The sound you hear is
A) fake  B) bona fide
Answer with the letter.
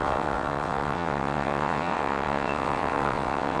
A